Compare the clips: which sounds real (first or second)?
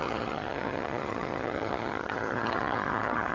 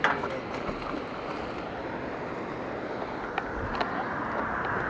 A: second